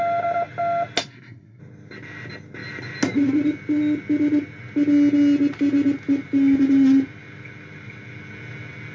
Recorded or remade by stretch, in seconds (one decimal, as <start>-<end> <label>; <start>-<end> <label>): 0.0-1.0 recorded; 1.0-1.6 remade; 1.6-8.9 recorded